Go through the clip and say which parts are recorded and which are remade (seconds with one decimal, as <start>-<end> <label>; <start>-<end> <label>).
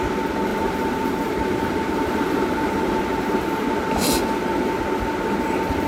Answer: 0.0-0.5 recorded; 0.5-3.0 remade; 3.0-5.9 recorded